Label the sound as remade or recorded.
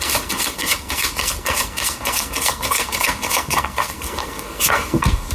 remade